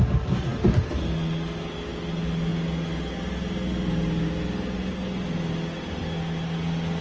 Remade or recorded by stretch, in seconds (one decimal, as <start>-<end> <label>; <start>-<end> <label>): 0.0-7.0 recorded